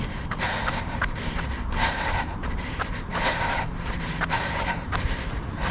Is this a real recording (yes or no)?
no